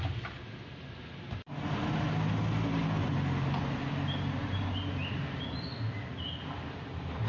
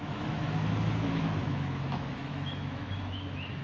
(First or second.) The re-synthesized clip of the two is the second